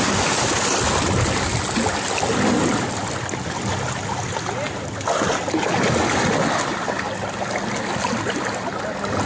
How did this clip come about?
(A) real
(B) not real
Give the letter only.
A